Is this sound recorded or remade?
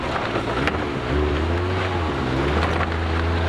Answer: recorded